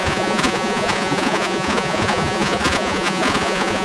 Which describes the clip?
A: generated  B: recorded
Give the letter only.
A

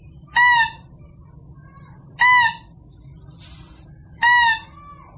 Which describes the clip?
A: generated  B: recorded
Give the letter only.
B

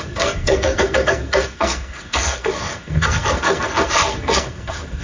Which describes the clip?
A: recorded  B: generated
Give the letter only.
B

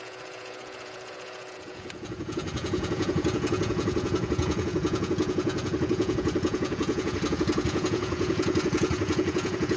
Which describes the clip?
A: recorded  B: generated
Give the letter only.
B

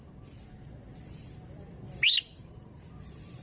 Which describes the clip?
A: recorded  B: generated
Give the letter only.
A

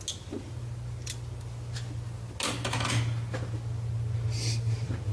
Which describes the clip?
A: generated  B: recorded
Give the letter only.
B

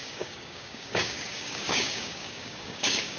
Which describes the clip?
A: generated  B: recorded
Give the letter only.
A